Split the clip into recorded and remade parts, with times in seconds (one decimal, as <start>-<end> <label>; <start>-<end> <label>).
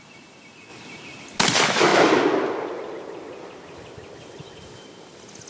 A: 0.0-5.5 recorded